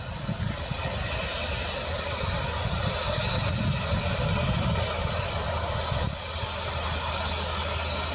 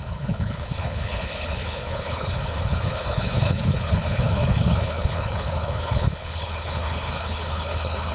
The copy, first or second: second